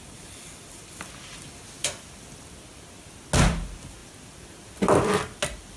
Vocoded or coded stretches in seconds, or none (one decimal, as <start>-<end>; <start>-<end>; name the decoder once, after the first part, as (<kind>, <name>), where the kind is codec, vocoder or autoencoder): none